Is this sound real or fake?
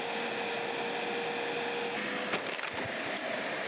real